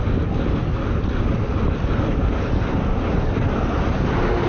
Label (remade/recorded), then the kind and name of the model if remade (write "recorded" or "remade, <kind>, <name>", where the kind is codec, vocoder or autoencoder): recorded